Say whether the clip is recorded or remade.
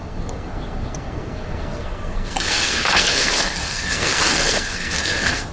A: remade